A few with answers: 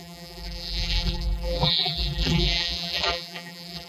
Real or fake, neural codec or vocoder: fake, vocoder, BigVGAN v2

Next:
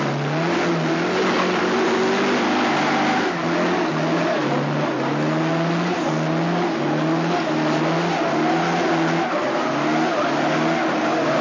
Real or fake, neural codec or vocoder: real